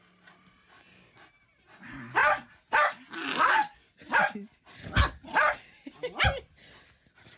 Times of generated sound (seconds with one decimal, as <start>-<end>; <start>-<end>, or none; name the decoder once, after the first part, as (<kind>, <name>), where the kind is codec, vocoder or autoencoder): none